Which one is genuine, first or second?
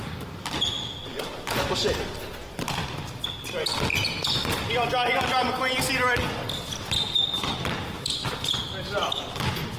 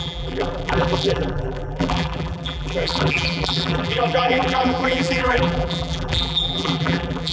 first